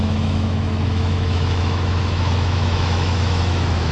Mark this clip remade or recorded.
remade